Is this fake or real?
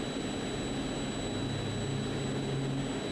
real